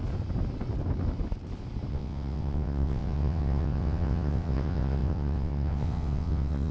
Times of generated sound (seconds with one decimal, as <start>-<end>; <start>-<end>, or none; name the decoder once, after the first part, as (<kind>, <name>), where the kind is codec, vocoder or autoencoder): 1.9-6.7 (vocoder, WaveNeXt)